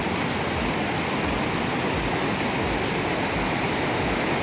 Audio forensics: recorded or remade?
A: recorded